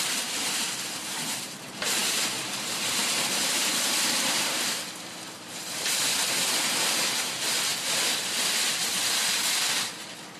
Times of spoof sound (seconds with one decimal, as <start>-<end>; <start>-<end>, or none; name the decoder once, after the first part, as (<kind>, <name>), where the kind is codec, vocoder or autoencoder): 0.0-8.9 (vocoder, BigVGAN v2)